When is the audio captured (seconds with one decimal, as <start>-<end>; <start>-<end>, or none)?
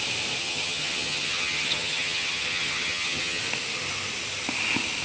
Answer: 0.0-0.4; 3.4-5.0